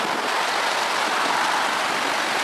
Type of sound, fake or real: real